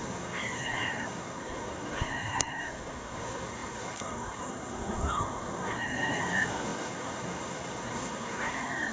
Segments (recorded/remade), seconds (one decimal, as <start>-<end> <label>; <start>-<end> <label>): 0.0-8.9 remade